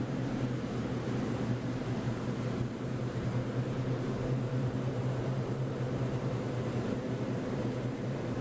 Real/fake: fake